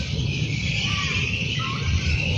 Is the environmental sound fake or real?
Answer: fake